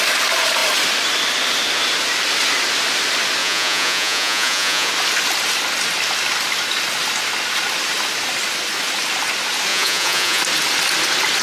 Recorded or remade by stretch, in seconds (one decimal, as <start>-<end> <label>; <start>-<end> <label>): 0.0-3.4 recorded; 3.4-4.9 remade; 4.9-9.7 recorded; 9.7-10.4 remade; 10.4-11.4 recorded